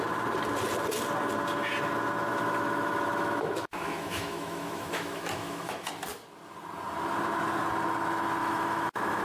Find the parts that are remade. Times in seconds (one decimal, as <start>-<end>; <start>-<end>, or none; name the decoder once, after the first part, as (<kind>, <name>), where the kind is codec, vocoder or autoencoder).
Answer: 2.3-5.9 (autoencoder, DAC-VAE); 8.4-9.2